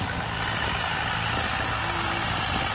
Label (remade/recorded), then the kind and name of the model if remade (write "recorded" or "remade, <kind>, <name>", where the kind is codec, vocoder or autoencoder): recorded